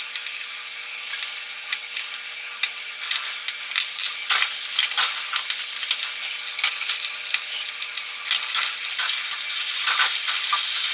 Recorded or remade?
recorded